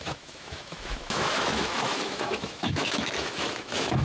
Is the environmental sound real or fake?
fake